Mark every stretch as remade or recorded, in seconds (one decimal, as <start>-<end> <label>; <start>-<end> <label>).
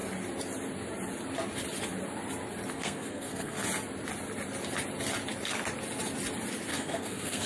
0.0-2.7 recorded; 2.7-3.6 remade; 3.6-6.7 recorded; 6.7-7.5 remade